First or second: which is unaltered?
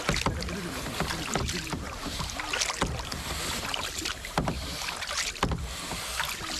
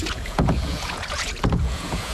first